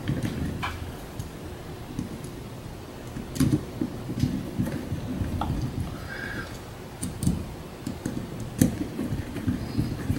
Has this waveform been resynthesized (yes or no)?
no